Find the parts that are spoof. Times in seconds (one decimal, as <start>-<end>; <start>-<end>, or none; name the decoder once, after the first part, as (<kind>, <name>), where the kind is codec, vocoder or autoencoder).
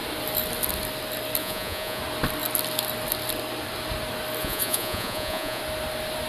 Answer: 1.4-2.0 (vocoder, Vocos); 4.4-5.6